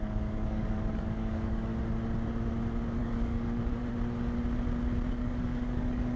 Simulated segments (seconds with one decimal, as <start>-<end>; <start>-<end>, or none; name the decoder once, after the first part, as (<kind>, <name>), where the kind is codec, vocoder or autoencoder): 0.0-1.7 (codec, DAC); 2.9-3.8; 5.1-6.2